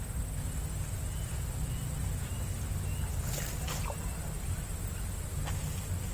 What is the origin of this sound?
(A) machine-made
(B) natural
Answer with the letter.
B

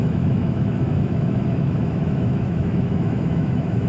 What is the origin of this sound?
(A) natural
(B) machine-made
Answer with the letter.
B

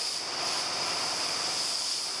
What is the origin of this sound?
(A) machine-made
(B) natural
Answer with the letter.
B